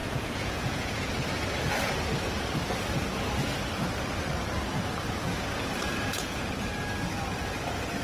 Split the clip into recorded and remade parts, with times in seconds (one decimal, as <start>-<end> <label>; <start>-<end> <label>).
0.0-1.1 remade; 1.1-5.9 recorded; 5.9-6.5 remade; 6.5-8.0 recorded